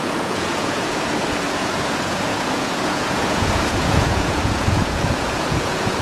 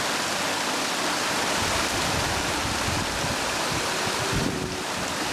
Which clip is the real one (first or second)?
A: second